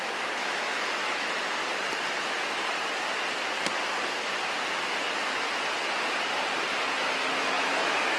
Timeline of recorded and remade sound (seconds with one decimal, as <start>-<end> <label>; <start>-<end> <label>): 0.0-1.6 remade; 1.6-2.2 recorded; 2.2-2.6 remade; 2.6-7.3 recorded; 7.3-8.2 remade